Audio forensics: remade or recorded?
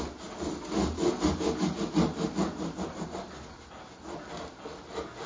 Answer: recorded